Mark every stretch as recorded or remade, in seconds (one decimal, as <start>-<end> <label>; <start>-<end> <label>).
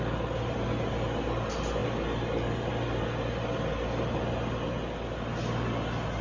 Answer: 0.0-6.2 recorded